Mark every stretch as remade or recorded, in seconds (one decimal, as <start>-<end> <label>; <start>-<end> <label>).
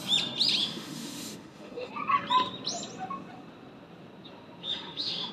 0.0-0.6 recorded; 0.6-1.9 remade; 1.9-4.6 recorded; 4.6-5.3 remade